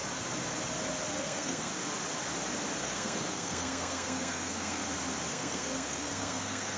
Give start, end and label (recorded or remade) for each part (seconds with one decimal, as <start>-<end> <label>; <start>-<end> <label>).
0.0-1.2 recorded; 1.2-1.7 remade; 1.7-2.8 recorded; 2.8-4.8 remade; 4.8-5.3 recorded; 5.3-6.8 remade